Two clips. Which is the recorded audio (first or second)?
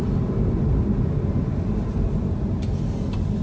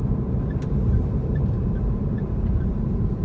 first